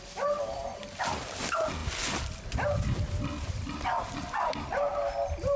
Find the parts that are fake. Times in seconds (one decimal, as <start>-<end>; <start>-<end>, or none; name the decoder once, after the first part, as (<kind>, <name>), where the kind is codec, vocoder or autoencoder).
none